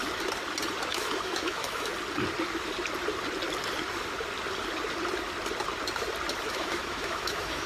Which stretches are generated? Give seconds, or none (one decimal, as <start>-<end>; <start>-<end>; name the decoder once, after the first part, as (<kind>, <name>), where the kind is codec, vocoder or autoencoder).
0.9-1.9 (autoencoder, DAC-VAE); 6.5-7.7